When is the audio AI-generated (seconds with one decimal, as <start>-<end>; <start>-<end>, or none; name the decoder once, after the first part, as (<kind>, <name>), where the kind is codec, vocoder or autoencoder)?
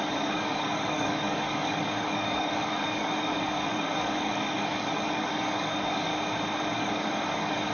0.0-6.1 (codec, DAC); 6.8-7.7